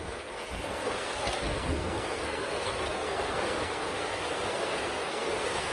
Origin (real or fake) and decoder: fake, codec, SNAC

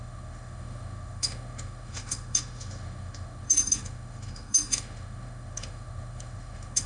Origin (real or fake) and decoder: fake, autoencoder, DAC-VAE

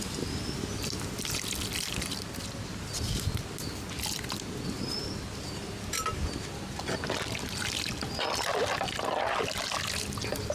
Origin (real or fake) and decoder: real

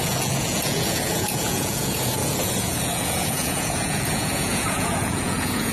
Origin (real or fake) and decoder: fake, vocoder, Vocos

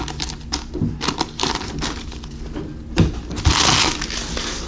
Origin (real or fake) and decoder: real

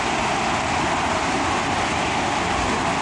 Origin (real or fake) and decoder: real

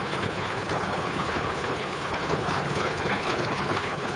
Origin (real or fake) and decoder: fake, codec, HILCodec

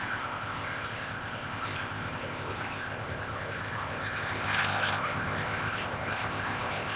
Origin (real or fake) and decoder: fake, codec, ZipCodec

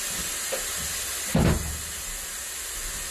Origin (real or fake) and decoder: real